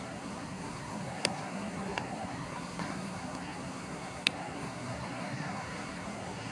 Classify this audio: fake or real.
fake